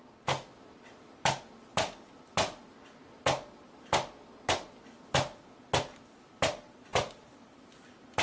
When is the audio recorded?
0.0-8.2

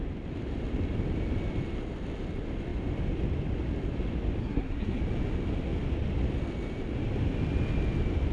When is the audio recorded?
0.0-4.4; 5.0-8.3

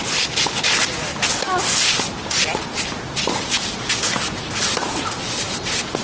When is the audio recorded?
0.0-6.0

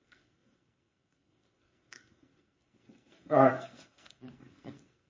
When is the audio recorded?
none

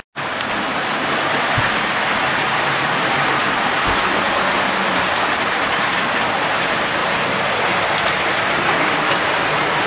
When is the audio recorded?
0.0-9.9